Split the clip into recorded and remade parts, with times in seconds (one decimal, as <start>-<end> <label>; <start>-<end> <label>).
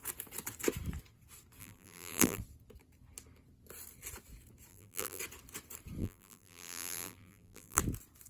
0.0-1.6 recorded; 1.6-2.4 remade; 2.4-4.7 recorded; 4.7-5.2 remade; 5.2-6.0 recorded; 6.0-7.8 remade; 7.8-8.3 recorded